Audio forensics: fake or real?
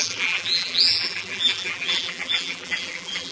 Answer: fake